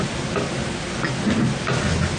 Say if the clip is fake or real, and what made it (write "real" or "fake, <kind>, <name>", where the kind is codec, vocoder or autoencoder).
real